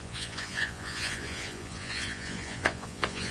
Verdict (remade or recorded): remade